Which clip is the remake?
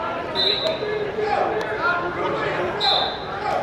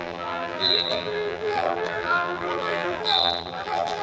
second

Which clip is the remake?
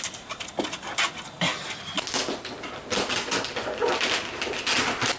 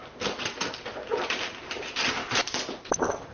second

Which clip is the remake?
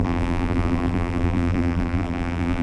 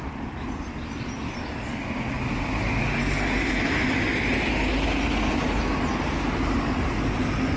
first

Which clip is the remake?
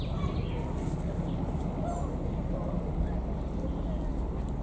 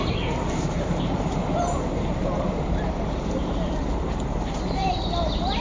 second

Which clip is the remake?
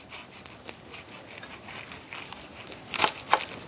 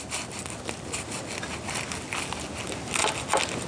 first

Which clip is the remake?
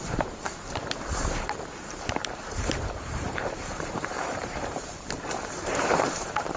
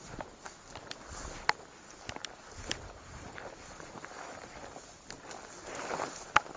first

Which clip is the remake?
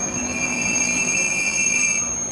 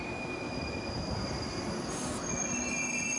first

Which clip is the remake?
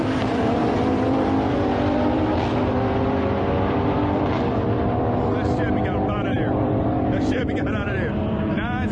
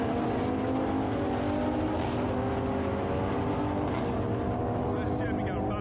first